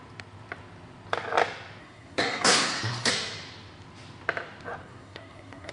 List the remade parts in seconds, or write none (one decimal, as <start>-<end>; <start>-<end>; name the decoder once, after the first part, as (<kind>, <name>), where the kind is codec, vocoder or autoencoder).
1.8-3.1 (codec, SNAC); 4.8-5.7